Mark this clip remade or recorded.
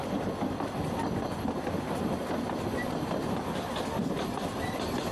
recorded